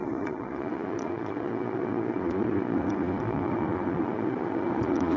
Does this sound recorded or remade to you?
remade